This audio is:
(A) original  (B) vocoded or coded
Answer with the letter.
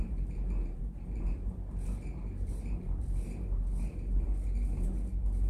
B